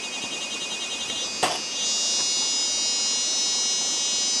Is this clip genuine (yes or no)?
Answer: yes